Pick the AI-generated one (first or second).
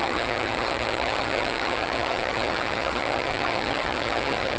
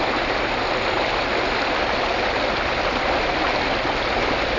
first